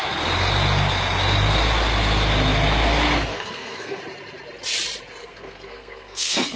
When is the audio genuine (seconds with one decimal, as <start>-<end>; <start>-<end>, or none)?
0.0-3.3; 4.0-5.2